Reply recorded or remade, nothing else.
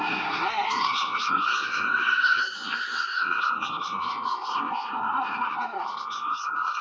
remade